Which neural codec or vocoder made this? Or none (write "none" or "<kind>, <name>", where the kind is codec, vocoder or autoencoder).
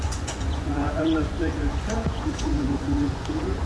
vocoder, Vocos